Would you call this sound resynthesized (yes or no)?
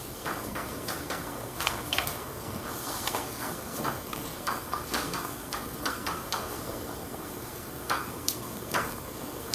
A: yes